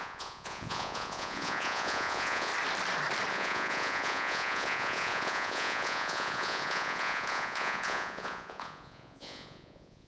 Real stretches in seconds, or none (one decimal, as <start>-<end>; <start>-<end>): 2.5-3.3